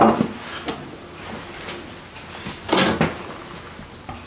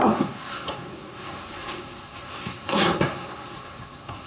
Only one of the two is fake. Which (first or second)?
second